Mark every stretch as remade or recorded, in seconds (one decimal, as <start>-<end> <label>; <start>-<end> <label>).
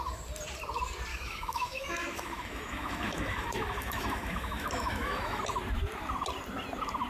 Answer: 0.0-1.1 recorded; 1.1-5.4 remade; 5.4-7.1 recorded